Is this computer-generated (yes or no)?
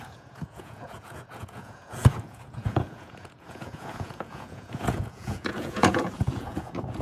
yes